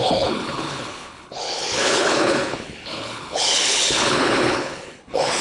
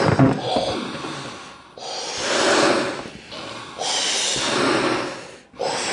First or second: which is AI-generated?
first